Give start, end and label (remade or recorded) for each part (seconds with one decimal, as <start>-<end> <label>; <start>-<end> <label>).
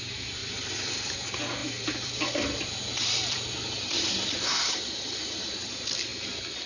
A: 0.0-0.4 recorded; 0.4-1.1 remade; 1.1-1.6 recorded; 1.6-5.6 remade; 5.6-6.7 recorded